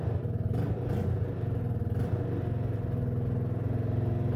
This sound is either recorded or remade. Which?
recorded